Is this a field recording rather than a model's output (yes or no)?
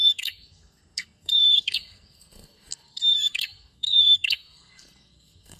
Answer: no